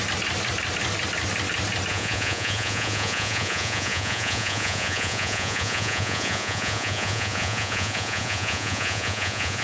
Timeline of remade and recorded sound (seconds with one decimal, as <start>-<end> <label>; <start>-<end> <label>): 0.0-1.9 recorded; 1.9-9.6 remade